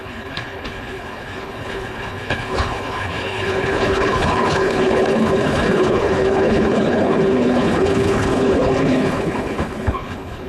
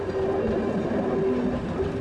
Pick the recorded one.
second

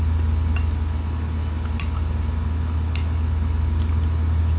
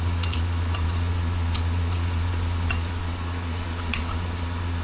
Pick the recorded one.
first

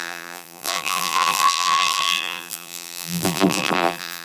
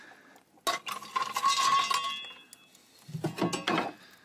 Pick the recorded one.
second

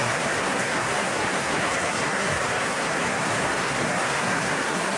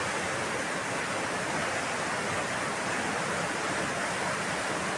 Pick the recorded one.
second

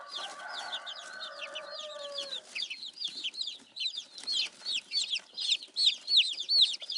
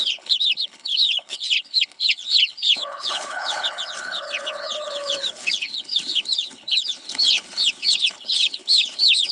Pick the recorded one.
first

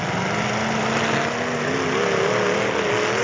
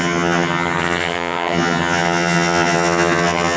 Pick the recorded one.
first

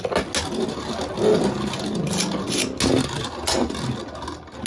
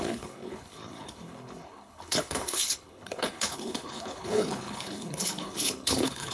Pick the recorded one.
first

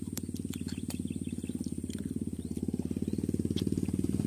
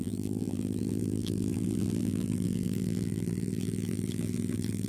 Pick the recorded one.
first